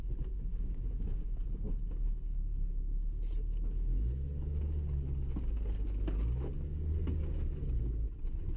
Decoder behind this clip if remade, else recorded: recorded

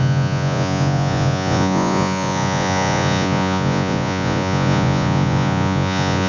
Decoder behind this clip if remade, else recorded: remade, vocoder, Vocos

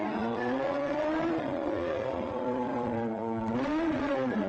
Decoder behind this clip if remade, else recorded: remade, vocoder, Vocos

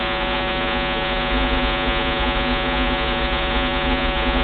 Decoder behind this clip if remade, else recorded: remade, vocoder, Vocos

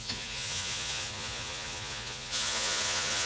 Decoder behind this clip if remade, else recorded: remade, vocoder, Vocos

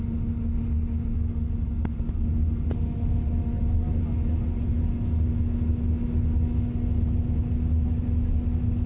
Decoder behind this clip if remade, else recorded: recorded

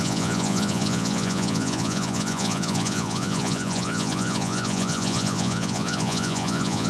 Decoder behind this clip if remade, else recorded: remade, vocoder, Vocos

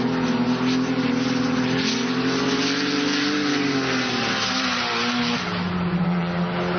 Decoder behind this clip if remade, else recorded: recorded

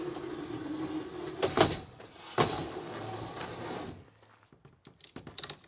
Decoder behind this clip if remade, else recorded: recorded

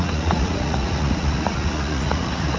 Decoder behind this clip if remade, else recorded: remade, vocoder, Vocos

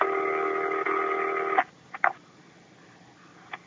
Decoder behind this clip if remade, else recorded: recorded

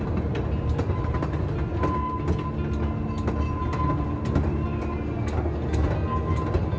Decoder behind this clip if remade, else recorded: recorded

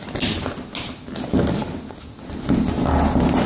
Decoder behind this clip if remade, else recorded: recorded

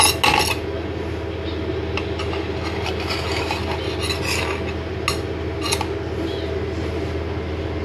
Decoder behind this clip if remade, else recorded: recorded